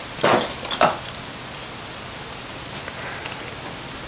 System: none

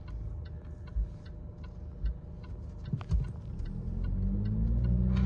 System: none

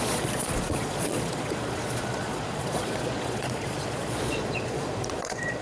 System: vocoder, Vocos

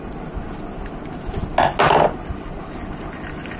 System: none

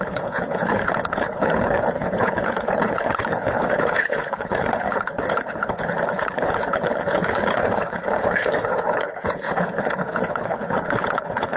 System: codec, HILCodec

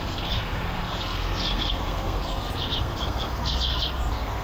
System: codec, SNAC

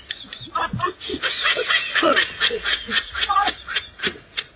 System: vocoder, Vocos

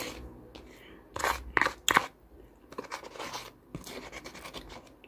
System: none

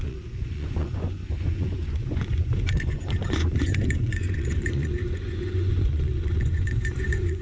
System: vocoder, Vocos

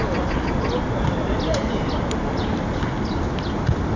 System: none